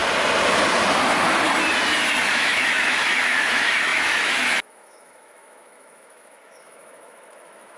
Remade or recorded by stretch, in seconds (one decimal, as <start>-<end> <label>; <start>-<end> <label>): 0.0-2.3 recorded; 2.3-7.8 remade